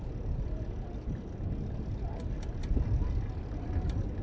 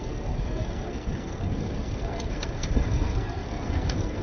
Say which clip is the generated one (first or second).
second